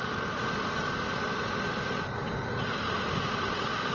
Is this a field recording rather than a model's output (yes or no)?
yes